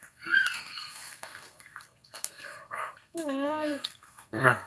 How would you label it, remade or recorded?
remade